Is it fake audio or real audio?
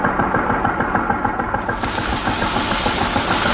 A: real